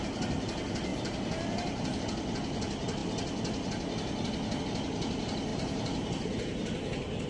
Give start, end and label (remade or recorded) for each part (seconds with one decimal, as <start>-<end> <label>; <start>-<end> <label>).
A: 0.0-0.9 recorded; 0.9-2.0 remade; 2.0-5.5 recorded; 5.5-7.3 remade